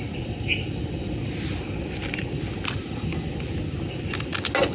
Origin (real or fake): real